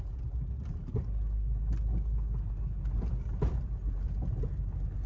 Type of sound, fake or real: real